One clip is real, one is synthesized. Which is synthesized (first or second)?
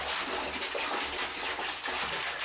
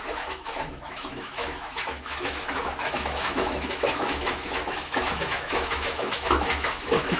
second